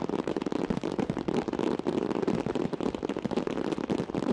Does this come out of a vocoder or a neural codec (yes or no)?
yes